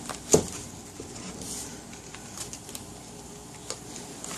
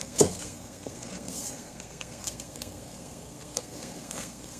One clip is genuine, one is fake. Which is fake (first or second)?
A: second